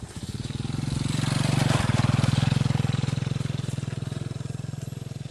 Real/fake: real